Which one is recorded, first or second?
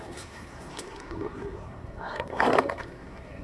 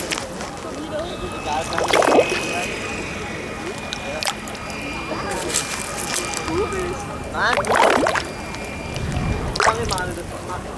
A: second